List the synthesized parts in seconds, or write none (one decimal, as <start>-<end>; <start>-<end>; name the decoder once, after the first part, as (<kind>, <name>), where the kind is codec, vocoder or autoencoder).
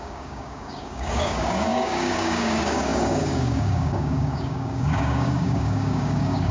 0.0-6.5 (codec, DAC)